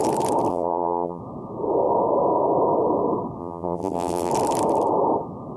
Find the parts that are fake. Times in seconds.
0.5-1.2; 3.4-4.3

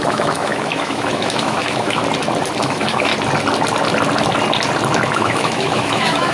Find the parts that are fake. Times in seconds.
0.0-2.0; 2.6-3.1; 5.1-6.3

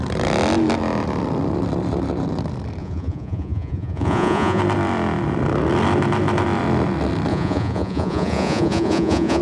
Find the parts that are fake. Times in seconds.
2.8-4.6; 7.3-9.4

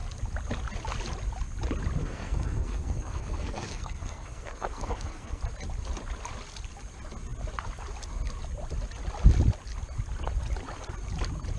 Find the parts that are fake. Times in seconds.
2.0-5.4

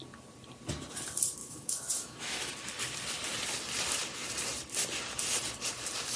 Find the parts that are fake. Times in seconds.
1.4-2.5

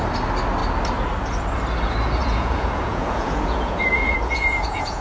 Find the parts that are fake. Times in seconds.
2.2-5.0

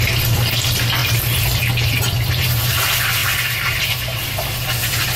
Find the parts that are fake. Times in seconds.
none

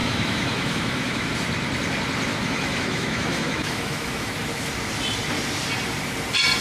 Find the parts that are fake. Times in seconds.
0.0-1.3; 2.3-4.3